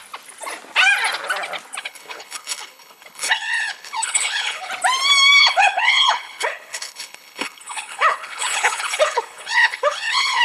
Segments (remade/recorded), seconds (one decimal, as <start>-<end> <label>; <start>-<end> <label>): 0.0-1.8 recorded; 1.8-4.7 remade; 4.7-5.4 recorded; 5.4-10.4 remade